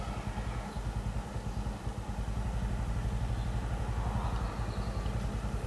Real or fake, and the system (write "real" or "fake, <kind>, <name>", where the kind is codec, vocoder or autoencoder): real